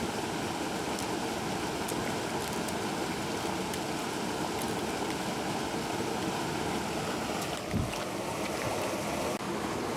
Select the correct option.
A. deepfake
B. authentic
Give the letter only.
B